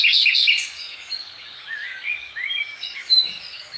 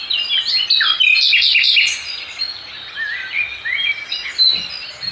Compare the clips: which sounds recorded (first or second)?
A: second